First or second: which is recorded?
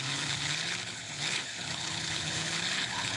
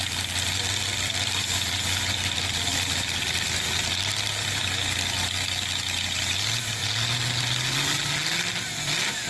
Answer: second